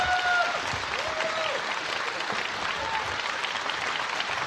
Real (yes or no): yes